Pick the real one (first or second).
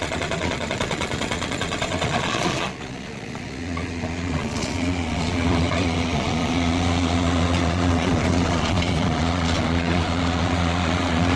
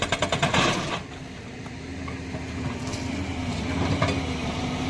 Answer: second